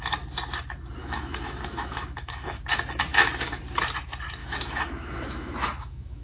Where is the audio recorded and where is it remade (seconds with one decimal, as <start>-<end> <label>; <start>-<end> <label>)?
0.0-1.0 recorded; 1.0-2.6 remade; 2.6-3.1 recorded; 3.1-3.6 remade; 3.6-4.4 recorded; 4.4-6.2 remade